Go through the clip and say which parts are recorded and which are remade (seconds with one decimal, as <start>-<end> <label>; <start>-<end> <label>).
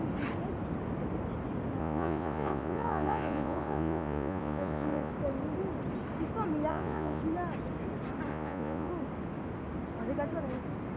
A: 0.0-1.8 recorded; 1.8-5.1 remade; 5.1-6.7 recorded; 6.7-7.2 remade; 7.2-8.3 recorded; 8.3-8.9 remade; 8.9-11.0 recorded